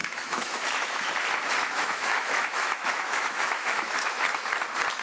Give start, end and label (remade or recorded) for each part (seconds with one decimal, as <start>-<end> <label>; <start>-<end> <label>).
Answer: 0.0-1.1 remade; 1.1-1.6 recorded; 1.6-4.5 remade; 4.5-5.0 recorded